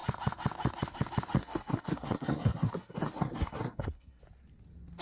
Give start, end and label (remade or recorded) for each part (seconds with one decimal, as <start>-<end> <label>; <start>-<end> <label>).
0.0-1.4 recorded; 1.4-4.2 remade; 4.2-5.0 recorded